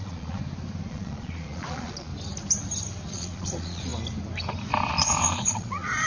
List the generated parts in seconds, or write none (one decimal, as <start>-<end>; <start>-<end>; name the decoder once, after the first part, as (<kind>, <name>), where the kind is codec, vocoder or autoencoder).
0.0-0.4 (vocoder, Vocos); 0.9-2.1; 3.1-3.9; 4.9-6.1